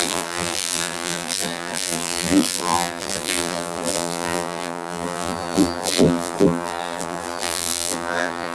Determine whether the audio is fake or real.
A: fake